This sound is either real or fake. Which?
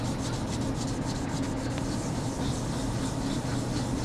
real